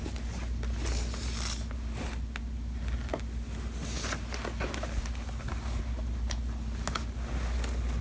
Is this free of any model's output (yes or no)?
yes